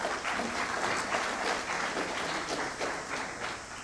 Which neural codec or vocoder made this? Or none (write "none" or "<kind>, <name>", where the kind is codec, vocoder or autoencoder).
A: none